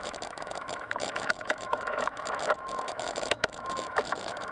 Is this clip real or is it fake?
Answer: fake